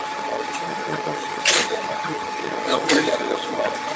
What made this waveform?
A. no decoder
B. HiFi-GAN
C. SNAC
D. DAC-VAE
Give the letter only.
B